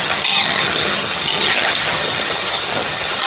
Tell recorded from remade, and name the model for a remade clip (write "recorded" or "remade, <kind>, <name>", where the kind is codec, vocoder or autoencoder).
remade, vocoder, HiFi-GAN